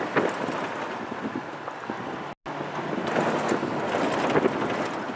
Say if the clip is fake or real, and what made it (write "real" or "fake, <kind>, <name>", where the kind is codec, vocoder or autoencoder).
real